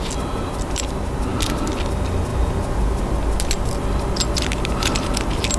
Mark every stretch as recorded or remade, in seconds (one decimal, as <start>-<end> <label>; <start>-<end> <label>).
0.0-5.6 recorded